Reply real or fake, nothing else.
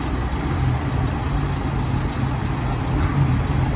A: real